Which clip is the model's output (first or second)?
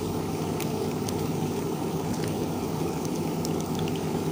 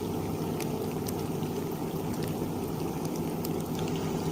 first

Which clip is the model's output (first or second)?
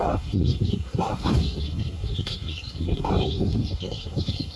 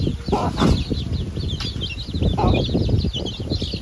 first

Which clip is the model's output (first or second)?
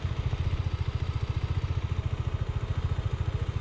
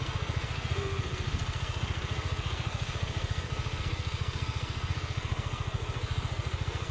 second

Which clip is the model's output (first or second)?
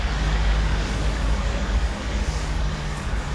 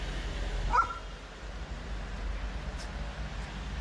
first